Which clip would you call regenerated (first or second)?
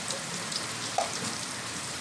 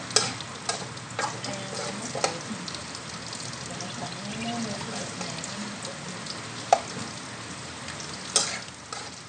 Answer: first